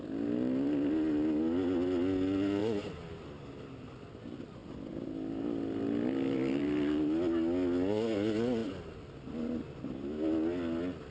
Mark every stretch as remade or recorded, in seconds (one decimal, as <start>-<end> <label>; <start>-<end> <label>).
0.0-2.6 recorded; 2.6-3.5 remade; 3.5-11.1 recorded